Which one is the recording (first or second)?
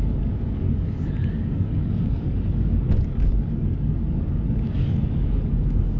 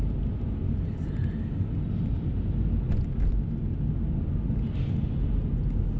second